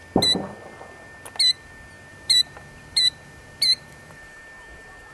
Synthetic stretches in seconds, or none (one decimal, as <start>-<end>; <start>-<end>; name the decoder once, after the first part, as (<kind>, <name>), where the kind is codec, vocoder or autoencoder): 2.1-4.4 (vocoder, BigVGAN v2)